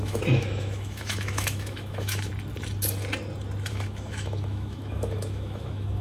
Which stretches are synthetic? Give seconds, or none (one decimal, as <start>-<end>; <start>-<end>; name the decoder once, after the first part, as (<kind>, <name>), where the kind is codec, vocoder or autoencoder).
0.0-2.3 (autoencoder, DAC-VAE); 3.7-6.0

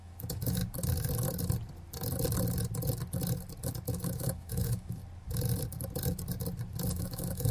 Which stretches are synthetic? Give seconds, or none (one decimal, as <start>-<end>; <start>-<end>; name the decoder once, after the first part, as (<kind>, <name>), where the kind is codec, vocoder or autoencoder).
0.0-0.6 (autoencoder, DAC-VAE); 3.9-5.0; 6.9-7.5

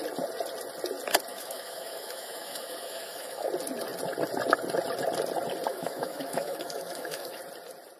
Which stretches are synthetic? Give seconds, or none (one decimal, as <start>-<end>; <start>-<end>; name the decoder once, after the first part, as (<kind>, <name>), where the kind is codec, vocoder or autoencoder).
1.3-3.5 (autoencoder, DAC-VAE); 5.7-7.4

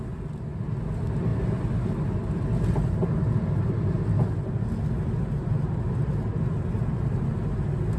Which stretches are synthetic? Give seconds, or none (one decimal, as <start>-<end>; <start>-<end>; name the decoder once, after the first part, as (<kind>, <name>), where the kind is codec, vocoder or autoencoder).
none

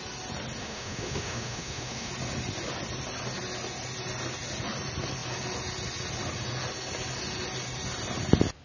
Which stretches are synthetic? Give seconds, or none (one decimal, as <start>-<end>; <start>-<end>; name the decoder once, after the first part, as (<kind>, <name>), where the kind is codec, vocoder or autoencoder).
0.6-2.1 (autoencoder, DAC-VAE)

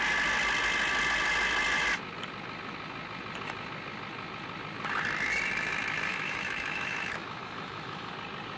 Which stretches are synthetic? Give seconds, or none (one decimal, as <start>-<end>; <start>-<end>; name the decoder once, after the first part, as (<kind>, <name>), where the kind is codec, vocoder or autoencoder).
6.1-8.1 (autoencoder, DAC-VAE)